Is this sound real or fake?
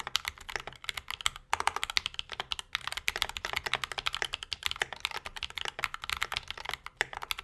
real